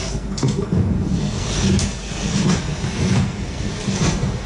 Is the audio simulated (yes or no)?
yes